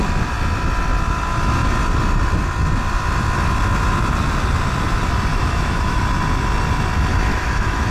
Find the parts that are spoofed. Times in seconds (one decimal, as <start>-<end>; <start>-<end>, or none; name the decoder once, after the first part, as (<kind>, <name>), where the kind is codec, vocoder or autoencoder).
5.3-6.0 (autoencoder, DAC-VAE); 7.1-7.9